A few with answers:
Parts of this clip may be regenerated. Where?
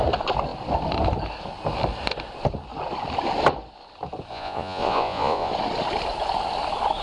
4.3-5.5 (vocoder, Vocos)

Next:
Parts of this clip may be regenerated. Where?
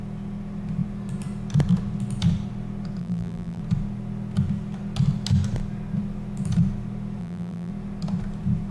3.0-3.6 (vocoder, BigVGAN v2); 7.2-7.7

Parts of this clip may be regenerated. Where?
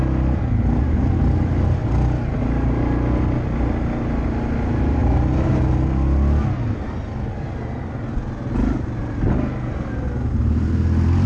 none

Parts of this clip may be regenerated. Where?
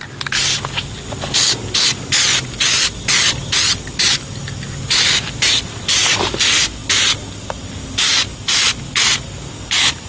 none